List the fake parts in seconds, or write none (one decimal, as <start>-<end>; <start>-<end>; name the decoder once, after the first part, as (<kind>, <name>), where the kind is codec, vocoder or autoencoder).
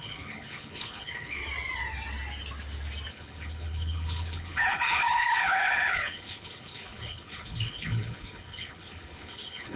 0.0-1.4 (codec, HILCodec); 3.1-9.8